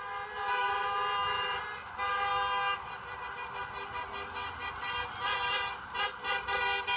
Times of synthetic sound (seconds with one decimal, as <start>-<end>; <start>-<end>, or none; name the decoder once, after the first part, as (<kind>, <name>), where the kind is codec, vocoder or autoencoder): none